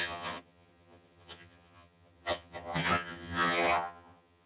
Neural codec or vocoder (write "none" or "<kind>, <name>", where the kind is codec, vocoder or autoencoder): vocoder, HiFi-GAN